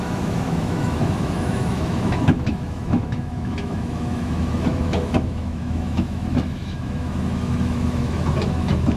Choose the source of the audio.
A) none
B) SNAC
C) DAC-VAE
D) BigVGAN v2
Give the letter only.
C